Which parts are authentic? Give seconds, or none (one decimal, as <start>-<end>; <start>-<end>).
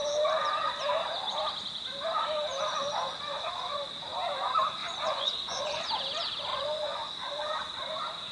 0.0-4.8; 5.8-6.5; 7.1-8.3